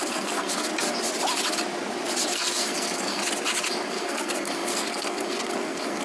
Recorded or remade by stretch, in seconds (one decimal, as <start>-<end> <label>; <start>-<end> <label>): 0.0-0.7 remade; 0.7-2.3 recorded; 2.3-3.2 remade; 3.2-3.9 recorded; 3.9-6.0 remade